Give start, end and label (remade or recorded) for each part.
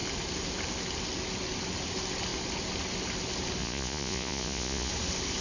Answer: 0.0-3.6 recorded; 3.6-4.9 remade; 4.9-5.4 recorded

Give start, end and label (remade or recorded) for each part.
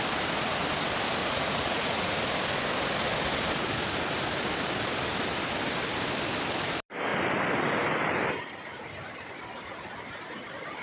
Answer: 0.0-1.2 recorded; 1.2-2.2 remade; 2.2-10.8 recorded